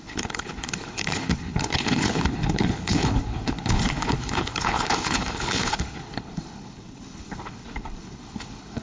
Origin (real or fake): fake